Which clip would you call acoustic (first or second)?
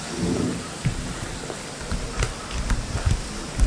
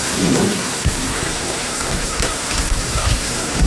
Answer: first